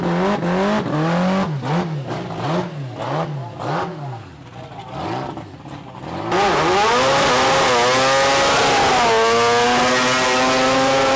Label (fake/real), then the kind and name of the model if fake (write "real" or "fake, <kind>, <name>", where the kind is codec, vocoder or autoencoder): real